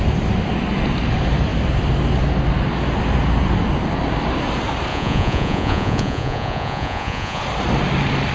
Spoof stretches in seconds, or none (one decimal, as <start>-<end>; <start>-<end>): 4.9-7.4